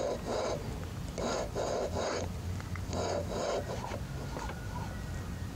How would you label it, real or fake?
real